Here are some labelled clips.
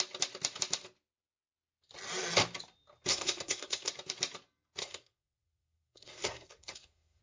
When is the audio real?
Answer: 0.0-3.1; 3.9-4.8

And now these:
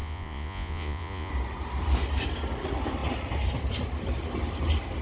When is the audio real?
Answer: 1.3-5.0

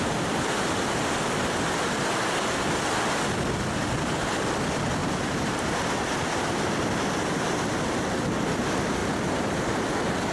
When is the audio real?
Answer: 0.0-5.0; 5.8-9.0; 9.8-10.3

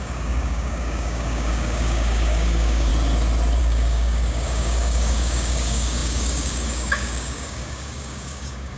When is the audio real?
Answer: 2.9-3.6